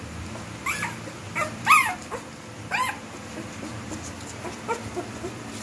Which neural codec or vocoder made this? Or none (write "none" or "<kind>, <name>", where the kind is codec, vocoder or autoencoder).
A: vocoder, BigVGAN v2